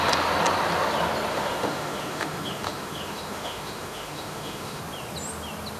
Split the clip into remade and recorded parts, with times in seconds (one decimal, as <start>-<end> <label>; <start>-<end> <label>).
0.0-1.3 recorded; 1.3-4.8 remade; 4.8-5.8 recorded